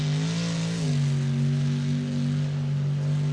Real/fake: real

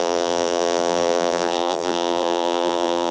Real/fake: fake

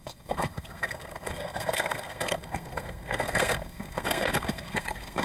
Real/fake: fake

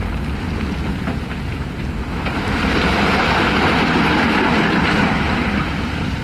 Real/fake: real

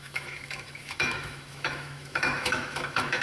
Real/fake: fake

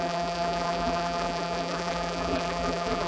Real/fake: fake